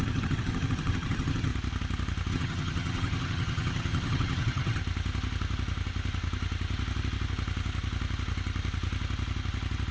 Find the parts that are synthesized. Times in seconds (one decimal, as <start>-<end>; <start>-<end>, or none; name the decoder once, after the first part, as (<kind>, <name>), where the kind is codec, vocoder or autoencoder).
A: 0.0-1.5 (vocoder, HiFi-GAN); 2.3-4.8